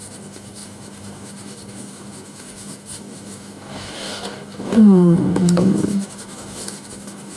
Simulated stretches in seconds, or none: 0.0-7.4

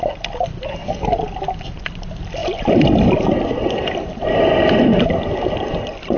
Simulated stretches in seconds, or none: none

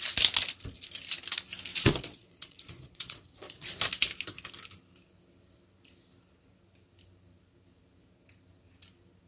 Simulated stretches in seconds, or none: 1.7-3.7

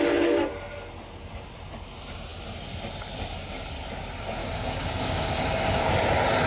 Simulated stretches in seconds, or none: 4.4-5.9

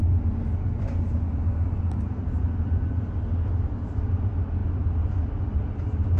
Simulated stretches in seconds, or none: none

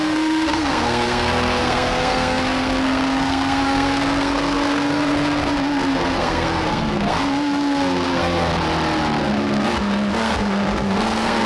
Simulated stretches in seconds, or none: 0.0-8.5; 9.2-11.5

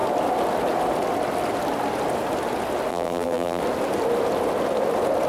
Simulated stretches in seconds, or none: 2.9-3.6

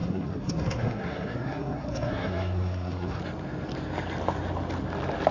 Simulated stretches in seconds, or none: 0.0-3.2